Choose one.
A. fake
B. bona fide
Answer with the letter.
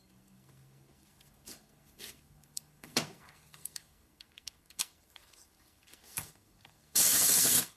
A